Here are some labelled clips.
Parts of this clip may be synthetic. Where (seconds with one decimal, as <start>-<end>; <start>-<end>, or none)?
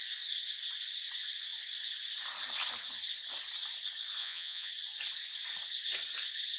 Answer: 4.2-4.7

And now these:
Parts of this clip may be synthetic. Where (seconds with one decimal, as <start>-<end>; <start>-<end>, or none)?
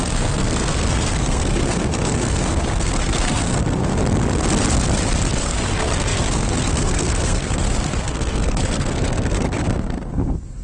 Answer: 0.0-4.0; 5.4-10.6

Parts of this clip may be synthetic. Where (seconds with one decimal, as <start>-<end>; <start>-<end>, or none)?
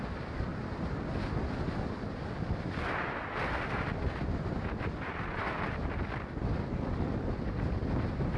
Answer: 0.0-0.5; 2.5-8.4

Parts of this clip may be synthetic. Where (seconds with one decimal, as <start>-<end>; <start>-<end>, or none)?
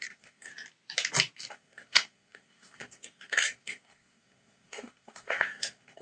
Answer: 0.0-0.5; 1.5-6.0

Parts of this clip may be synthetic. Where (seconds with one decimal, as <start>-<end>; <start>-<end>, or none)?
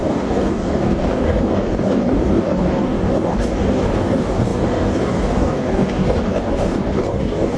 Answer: 0.0-7.6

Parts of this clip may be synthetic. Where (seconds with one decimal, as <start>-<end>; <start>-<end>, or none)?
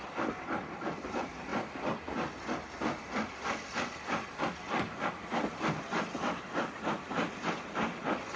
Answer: 0.0-1.5; 5.1-8.4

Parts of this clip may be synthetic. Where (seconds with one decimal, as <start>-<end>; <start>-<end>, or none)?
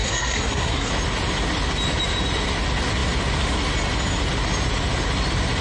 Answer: 0.0-0.9